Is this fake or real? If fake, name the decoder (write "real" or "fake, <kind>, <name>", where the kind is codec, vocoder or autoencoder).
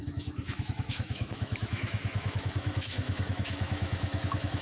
fake, autoencoder, DAC-VAE